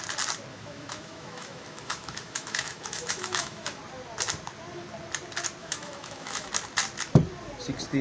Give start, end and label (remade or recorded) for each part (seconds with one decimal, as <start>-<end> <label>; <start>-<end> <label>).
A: 0.0-0.5 recorded; 0.5-3.8 remade; 3.8-5.6 recorded; 5.6-6.5 remade; 6.5-8.0 recorded